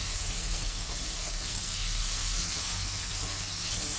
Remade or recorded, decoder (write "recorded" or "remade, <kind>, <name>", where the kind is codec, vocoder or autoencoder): remade, codec, SNAC